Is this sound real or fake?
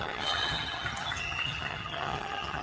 fake